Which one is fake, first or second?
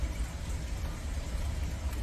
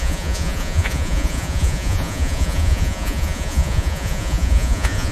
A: second